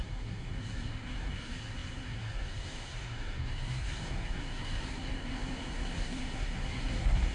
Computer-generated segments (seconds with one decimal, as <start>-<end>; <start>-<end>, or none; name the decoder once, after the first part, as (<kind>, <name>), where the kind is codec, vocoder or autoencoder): 0.0-7.3 (codec, SNAC)